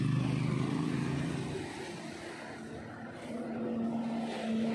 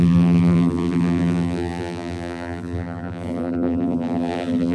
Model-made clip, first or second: second